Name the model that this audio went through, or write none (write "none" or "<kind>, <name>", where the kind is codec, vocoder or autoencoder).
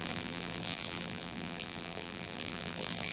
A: vocoder, BigVGAN v2